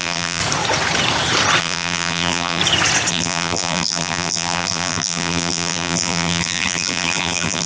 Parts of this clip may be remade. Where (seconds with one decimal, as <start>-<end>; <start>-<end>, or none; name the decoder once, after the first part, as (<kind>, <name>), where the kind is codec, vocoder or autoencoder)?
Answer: 0.0-0.4 (vocoder, BigVGAN v2); 1.6-2.6; 3.1-7.7